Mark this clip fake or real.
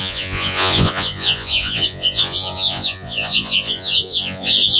fake